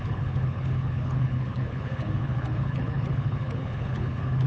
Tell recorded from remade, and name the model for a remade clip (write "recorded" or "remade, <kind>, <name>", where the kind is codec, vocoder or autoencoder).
remade, codec, HILCodec